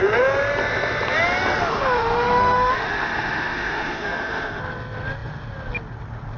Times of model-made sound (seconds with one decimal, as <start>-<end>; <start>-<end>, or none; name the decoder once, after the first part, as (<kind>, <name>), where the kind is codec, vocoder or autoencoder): 1.6-4.6 (autoencoder, DAC-VAE)